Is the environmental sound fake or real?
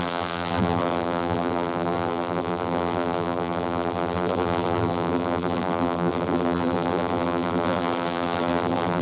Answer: fake